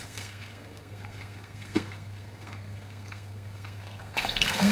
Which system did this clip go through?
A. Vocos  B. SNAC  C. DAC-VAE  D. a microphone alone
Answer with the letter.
B